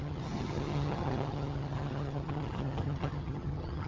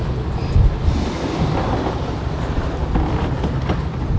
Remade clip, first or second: first